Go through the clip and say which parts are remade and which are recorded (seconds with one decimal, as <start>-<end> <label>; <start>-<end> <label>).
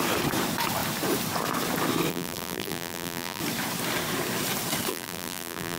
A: 0.0-2.1 recorded; 2.1-3.4 remade; 3.4-4.9 recorded; 4.9-5.8 remade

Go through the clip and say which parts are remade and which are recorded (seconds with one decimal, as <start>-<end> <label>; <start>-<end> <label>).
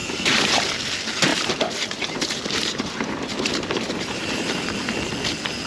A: 0.0-0.9 remade; 0.9-1.3 recorded; 1.3-4.7 remade; 4.7-5.7 recorded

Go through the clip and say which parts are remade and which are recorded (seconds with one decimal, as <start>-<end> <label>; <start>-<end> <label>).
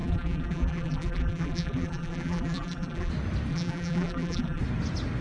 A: 0.0-3.1 remade; 3.1-3.5 recorded; 3.5-4.6 remade; 4.6-5.2 recorded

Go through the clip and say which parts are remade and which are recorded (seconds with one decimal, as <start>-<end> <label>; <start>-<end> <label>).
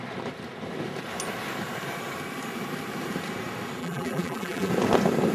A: 0.0-3.8 recorded; 3.8-4.7 remade; 4.7-5.3 recorded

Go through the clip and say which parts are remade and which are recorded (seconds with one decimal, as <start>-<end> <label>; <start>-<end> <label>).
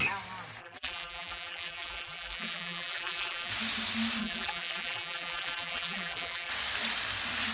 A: 0.0-0.6 recorded; 0.6-3.5 remade; 3.5-4.2 recorded; 4.2-6.5 remade; 6.5-7.5 recorded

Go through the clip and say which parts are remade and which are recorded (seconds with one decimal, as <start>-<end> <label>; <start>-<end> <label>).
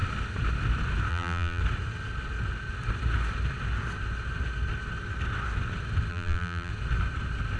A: 0.0-1.1 recorded; 1.1-1.6 remade; 1.6-6.1 recorded; 6.1-6.7 remade; 6.7-7.6 recorded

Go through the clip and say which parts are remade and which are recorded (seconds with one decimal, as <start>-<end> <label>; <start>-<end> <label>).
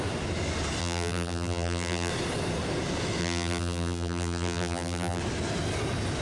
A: 0.0-0.8 recorded; 0.8-2.1 remade; 2.1-3.2 recorded; 3.2-5.2 remade; 5.2-6.2 recorded